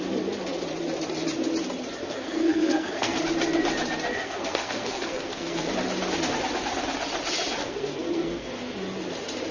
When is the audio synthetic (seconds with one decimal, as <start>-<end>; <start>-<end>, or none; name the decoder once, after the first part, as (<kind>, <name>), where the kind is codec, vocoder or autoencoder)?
2.0-3.2 (codec, SNAC); 4.1-5.7; 7.6-8.5